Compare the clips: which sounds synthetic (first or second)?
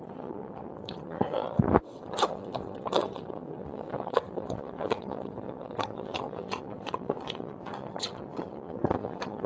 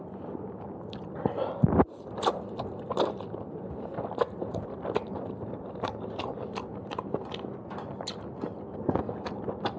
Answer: first